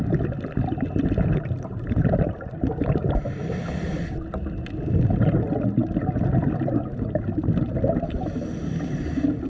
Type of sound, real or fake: real